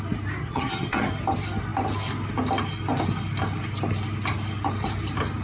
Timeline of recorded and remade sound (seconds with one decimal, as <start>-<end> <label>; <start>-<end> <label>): 0.0-0.4 recorded; 0.4-1.1 remade; 1.1-5.4 recorded